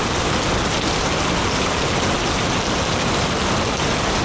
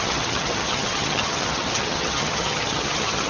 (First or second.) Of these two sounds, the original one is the first